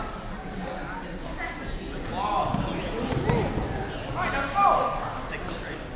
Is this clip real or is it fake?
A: real